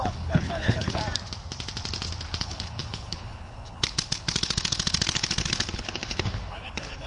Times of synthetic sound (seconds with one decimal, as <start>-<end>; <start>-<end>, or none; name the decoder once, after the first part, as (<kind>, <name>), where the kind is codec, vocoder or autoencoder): 0.0-1.0 (codec, HILCodec); 2.4-7.1